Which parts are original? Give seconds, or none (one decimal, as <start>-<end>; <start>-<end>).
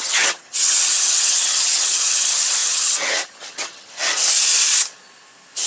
4.0-5.7